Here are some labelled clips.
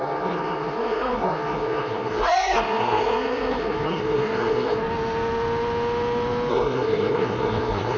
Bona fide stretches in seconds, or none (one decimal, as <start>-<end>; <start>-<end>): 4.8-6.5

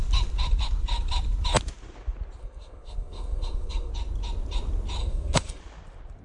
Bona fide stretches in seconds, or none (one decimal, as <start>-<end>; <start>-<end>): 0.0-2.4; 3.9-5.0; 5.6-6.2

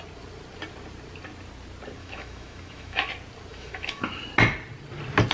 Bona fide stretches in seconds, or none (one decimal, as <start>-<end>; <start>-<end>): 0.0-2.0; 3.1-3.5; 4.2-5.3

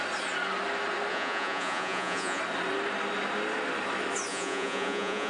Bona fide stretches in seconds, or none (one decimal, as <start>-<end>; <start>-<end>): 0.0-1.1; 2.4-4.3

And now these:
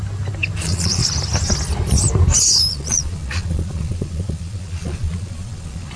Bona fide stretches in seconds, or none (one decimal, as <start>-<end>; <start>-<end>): 0.0-0.6; 1.0-2.7

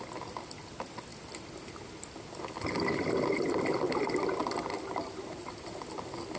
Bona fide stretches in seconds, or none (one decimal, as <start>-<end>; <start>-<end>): 0.0-6.4